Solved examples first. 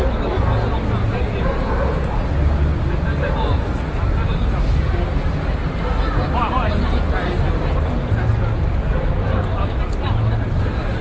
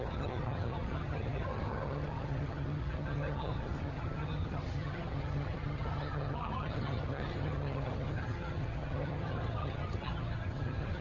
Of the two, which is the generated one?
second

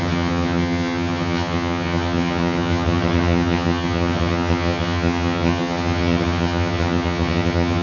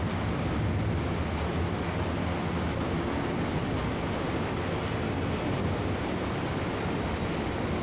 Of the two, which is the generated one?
first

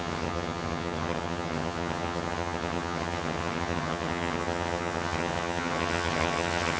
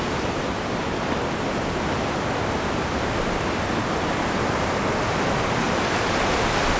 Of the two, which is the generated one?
first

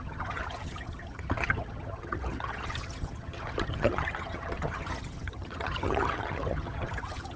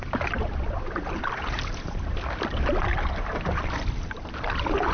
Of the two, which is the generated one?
first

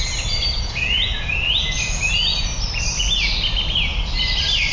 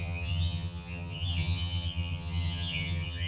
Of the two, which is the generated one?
second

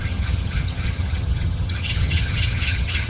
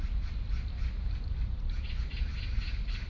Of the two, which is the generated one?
first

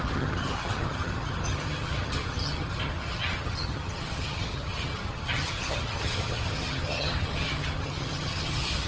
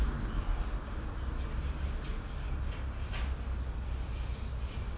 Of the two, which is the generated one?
first